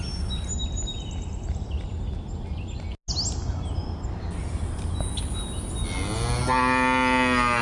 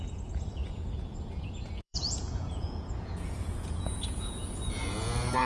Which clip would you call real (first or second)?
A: first